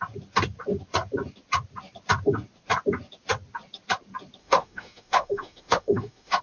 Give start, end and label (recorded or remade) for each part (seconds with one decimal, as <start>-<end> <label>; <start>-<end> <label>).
0.0-4.4 recorded; 4.4-6.4 remade